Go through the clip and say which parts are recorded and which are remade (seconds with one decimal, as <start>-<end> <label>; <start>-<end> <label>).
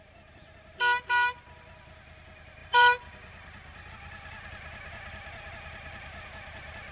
0.0-2.6 recorded; 2.6-3.9 remade; 3.9-6.9 recorded